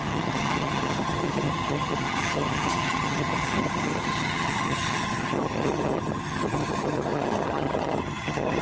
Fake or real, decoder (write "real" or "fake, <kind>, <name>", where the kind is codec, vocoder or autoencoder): fake, vocoder, HiFi-GAN